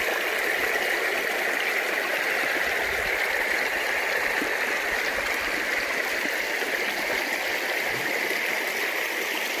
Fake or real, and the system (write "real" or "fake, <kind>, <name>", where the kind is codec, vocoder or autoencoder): real